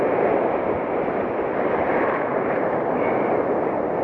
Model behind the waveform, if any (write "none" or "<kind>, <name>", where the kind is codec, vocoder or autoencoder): none